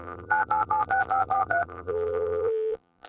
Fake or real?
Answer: fake